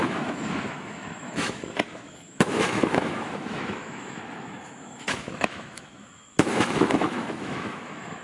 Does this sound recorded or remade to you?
remade